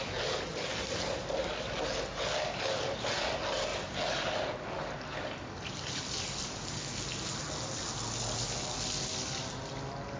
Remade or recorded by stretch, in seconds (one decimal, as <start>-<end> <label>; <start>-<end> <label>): 0.0-10.2 recorded